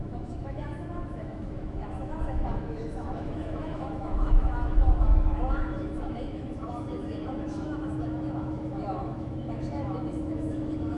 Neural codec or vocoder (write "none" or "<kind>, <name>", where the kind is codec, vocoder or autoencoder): autoencoder, DAC-VAE